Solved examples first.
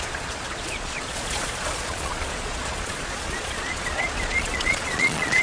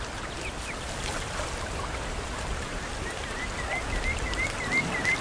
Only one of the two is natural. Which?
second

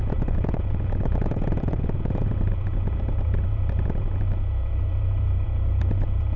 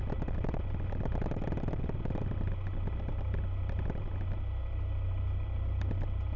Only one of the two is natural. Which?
second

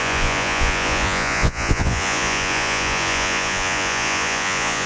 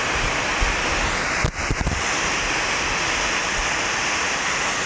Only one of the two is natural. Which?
second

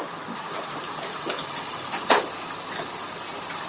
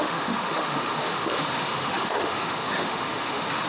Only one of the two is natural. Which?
first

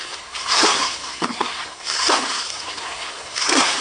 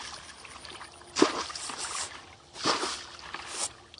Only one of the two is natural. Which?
second